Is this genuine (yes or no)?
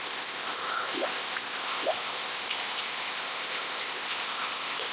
no